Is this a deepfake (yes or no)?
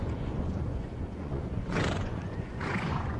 yes